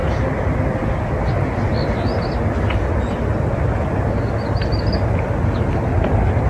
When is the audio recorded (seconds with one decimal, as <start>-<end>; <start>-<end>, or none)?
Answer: 0.0-6.5